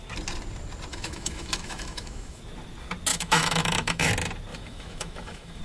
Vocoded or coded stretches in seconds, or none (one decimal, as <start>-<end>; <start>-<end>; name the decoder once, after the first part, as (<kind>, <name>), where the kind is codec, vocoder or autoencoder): 0.9-2.4 (autoencoder, DAC-VAE); 3.1-4.1; 4.5-5.6

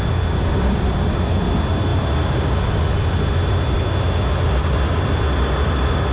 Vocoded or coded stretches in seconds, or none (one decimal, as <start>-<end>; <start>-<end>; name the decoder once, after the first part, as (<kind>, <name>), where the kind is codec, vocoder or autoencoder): none

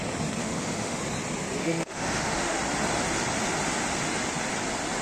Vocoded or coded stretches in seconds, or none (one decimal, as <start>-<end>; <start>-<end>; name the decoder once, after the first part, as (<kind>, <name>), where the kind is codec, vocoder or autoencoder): 0.4-1.0 (autoencoder, DAC-VAE); 1.6-2.6